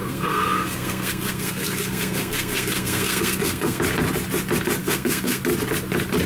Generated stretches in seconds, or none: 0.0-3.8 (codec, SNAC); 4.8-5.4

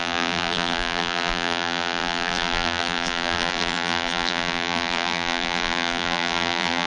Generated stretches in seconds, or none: 0.0-6.9 (vocoder, BigVGAN v2)